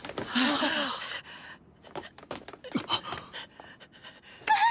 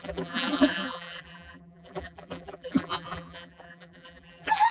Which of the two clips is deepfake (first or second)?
second